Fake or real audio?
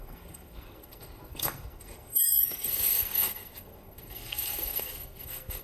fake